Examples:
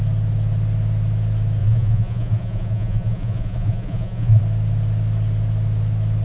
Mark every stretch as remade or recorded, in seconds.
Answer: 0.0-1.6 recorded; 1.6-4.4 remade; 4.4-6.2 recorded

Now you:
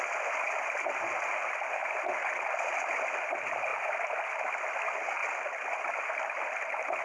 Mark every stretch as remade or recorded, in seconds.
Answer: 0.0-1.8 recorded; 1.8-2.7 remade; 2.7-7.0 recorded

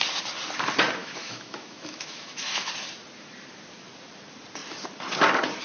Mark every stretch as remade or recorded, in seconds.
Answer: 0.0-1.0 recorded; 1.0-2.7 remade; 2.7-5.6 recorded

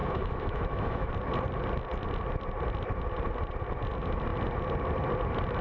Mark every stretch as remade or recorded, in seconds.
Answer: 0.0-1.1 remade; 1.1-5.6 recorded

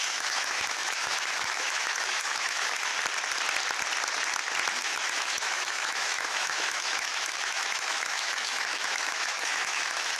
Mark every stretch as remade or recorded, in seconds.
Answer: 0.0-2.9 remade; 2.9-4.7 recorded; 4.7-10.2 remade

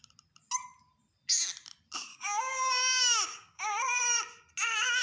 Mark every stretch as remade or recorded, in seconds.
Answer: 0.0-2.1 recorded; 2.1-3.8 remade; 3.8-5.0 recorded

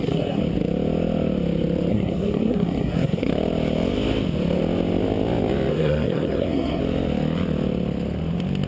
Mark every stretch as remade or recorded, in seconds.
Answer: 0.0-0.4 remade; 0.4-1.9 recorded; 1.9-3.3 remade; 3.3-5.7 recorded; 5.7-6.8 remade; 6.8-8.7 recorded

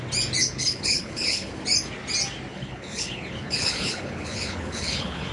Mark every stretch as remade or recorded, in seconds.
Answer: 0.0-0.4 recorded; 0.4-1.6 remade; 1.6-2.5 recorded; 2.5-5.3 remade